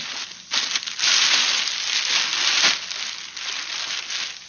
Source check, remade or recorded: recorded